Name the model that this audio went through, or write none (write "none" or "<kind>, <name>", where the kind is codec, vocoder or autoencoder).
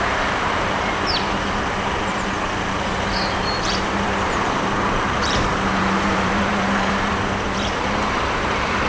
vocoder, BigVGAN v2